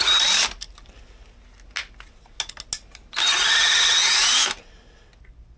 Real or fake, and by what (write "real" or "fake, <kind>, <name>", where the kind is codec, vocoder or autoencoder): real